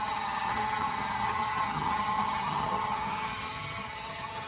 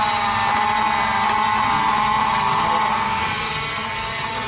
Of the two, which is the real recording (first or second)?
second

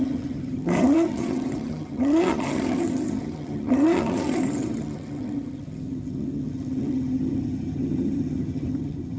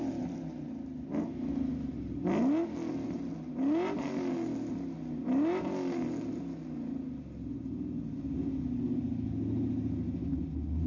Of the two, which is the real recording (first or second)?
second